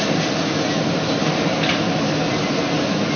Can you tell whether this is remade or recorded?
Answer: recorded